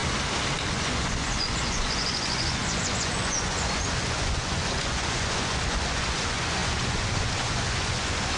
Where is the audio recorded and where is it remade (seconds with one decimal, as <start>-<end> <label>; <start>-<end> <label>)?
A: 0.0-0.6 recorded; 0.6-8.4 remade